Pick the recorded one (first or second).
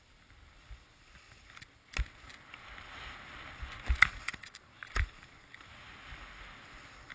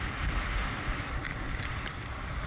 first